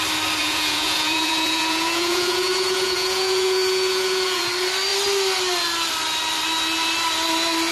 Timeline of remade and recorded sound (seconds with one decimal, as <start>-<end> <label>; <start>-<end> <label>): 0.0-0.4 recorded; 0.4-4.5 remade; 4.5-7.7 recorded